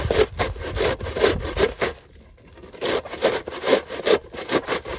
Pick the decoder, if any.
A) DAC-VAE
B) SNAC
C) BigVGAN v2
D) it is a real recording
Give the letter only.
D